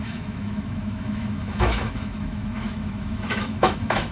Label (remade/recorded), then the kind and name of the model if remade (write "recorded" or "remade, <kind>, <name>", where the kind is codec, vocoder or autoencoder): remade, autoencoder, DAC-VAE